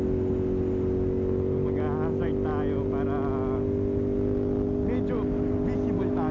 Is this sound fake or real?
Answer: real